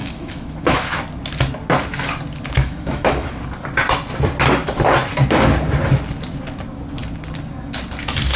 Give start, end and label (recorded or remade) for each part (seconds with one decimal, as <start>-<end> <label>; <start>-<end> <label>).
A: 0.0-1.0 remade; 1.0-2.6 recorded; 2.6-3.4 remade; 3.4-8.4 recorded